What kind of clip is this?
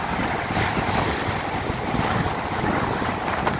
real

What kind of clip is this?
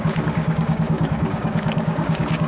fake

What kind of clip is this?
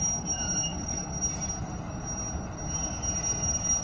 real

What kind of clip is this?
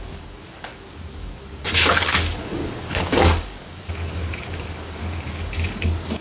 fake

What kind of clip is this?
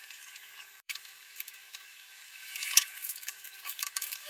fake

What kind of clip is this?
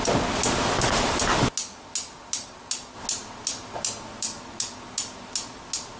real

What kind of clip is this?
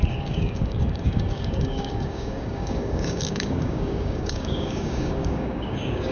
fake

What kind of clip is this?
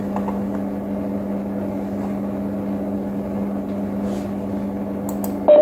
real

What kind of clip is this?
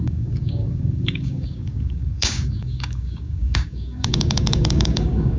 fake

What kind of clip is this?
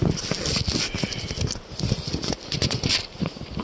real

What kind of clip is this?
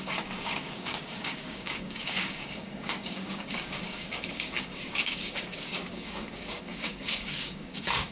fake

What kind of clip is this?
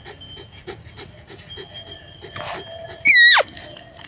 real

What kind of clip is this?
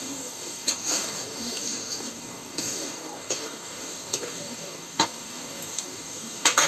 fake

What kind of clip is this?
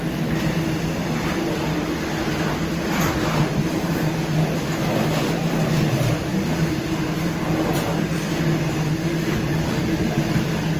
real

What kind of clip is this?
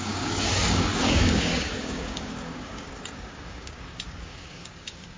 fake